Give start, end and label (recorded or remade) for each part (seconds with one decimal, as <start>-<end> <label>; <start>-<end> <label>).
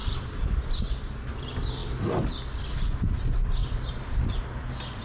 0.0-0.8 remade; 0.8-3.6 recorded; 3.6-4.4 remade; 4.4-5.0 recorded